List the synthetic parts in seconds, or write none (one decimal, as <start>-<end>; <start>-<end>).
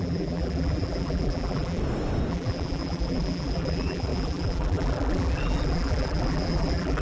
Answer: 0.0-1.8; 2.3-7.0